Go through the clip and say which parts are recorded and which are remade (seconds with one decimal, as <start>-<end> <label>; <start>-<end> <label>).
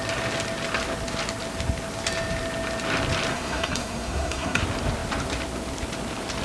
0.0-3.3 recorded; 3.3-4.6 remade; 4.6-6.4 recorded